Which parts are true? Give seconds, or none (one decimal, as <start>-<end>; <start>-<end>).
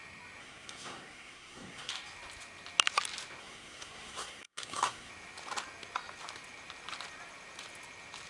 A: 0.0-0.4; 1.9-3.4; 5.1-8.3